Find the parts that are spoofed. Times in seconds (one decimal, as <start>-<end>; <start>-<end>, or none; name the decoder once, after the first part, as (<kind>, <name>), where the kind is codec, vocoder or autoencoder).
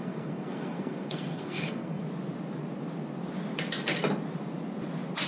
0.0-2.0 (codec, SNAC)